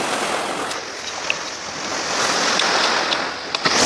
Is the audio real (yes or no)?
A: yes